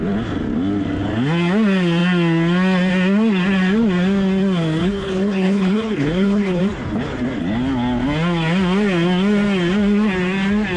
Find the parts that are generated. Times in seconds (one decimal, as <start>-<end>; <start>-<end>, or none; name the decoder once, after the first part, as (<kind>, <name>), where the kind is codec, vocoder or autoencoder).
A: 4.8-6.6 (codec, HILCodec)